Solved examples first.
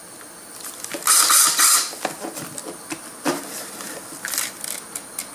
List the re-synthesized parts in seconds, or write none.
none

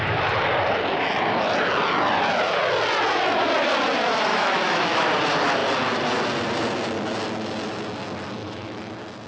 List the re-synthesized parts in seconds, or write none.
4.3-5.1 (autoencoder, DAC-VAE); 8.4-8.9